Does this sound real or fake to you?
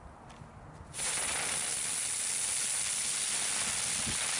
real